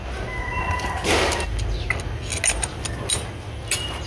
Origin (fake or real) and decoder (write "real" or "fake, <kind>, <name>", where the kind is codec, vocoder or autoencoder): real